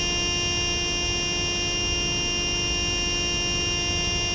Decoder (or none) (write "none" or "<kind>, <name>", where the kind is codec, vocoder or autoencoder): none